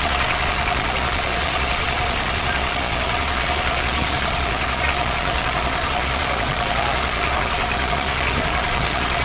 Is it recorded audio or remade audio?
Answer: remade